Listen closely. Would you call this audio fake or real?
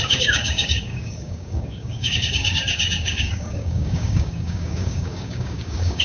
fake